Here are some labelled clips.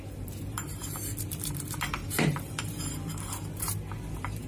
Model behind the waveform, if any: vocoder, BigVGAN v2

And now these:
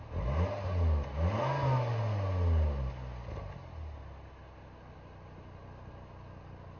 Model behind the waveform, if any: none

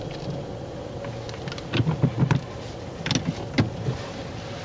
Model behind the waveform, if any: none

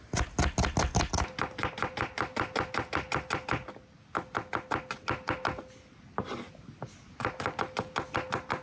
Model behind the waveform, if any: none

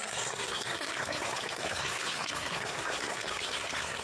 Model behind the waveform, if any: codec, SNAC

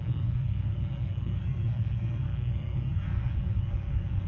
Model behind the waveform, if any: codec, SNAC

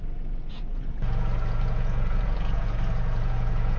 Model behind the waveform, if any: vocoder, Vocos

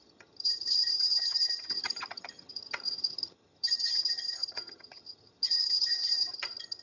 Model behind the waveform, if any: vocoder, HiFi-GAN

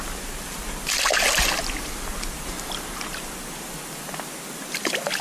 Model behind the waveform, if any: none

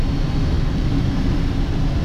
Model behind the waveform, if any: none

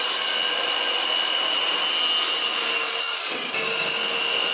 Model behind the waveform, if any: none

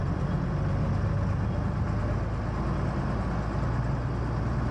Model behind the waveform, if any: none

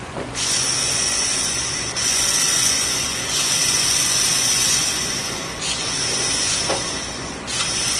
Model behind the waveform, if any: vocoder, Vocos